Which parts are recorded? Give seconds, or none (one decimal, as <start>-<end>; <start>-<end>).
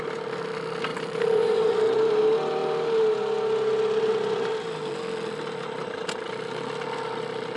0.0-0.9; 1.7-7.6